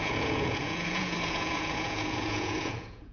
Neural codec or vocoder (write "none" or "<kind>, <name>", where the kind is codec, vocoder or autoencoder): vocoder, Vocos